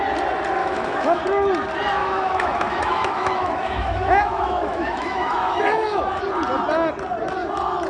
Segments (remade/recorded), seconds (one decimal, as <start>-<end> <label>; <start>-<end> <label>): 0.0-0.6 recorded; 0.6-1.2 remade; 1.2-2.0 recorded; 2.0-6.2 remade; 6.2-7.9 recorded